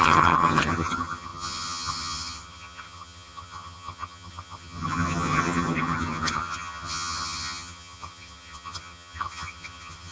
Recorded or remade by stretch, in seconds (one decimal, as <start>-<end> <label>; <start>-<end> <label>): 0.0-10.1 remade